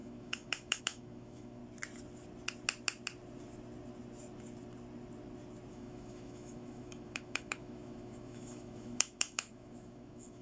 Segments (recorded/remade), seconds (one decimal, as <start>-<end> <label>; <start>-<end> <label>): 0.0-1.6 remade; 1.6-5.7 recorded; 5.7-10.4 remade